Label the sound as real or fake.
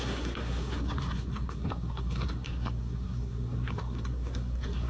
fake